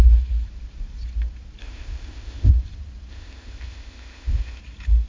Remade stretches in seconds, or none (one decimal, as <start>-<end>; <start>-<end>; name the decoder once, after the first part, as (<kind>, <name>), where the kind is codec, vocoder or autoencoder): 1.6-2.5 (codec, ZipCodec); 3.1-4.6